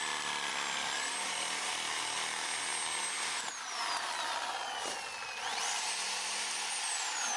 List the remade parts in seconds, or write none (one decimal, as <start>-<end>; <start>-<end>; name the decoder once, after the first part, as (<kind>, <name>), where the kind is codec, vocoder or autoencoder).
none